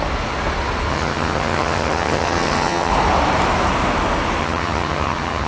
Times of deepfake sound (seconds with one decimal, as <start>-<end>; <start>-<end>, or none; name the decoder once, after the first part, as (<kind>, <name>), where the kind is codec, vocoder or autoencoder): 0.9-2.9 (vocoder, HiFi-GAN); 4.4-5.5